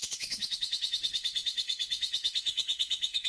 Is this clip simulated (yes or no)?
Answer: yes